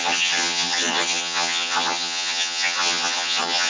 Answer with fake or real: fake